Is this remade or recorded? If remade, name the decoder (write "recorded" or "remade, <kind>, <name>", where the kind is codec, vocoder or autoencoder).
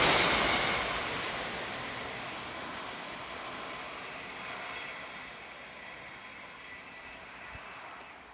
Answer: recorded